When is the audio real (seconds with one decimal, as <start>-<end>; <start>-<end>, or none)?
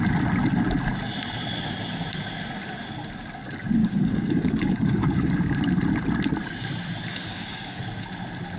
0.0-3.8; 5.6-7.1; 7.8-8.6